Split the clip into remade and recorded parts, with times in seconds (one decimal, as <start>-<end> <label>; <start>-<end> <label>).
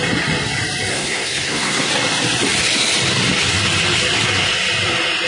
0.0-0.9 recorded; 0.9-1.9 remade; 1.9-5.3 recorded